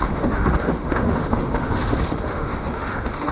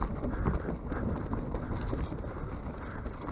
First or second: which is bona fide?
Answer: second